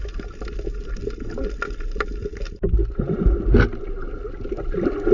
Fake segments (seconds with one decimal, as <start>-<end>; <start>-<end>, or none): none